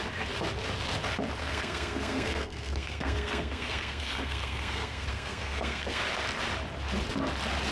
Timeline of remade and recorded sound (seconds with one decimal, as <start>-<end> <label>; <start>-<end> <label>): 0.0-1.4 recorded; 1.4-6.0 remade; 6.0-7.7 recorded